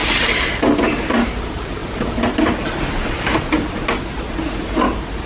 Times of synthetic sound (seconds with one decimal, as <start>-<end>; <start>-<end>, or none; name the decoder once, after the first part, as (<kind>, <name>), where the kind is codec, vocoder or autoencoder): 0.0-0.6 (vocoder, BigVGAN v2)